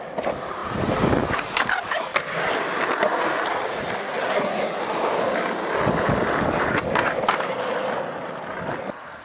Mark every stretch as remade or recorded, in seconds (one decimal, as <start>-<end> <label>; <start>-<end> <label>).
0.0-4.0 recorded; 4.0-4.8 remade; 4.8-9.2 recorded